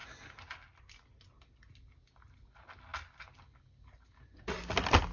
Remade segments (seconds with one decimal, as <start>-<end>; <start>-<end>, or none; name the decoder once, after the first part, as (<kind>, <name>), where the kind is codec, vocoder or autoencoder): none